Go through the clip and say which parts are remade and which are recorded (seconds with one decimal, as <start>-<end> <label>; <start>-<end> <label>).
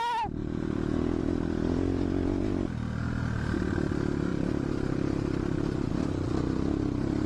0.0-0.4 recorded; 0.4-1.2 remade; 1.2-7.3 recorded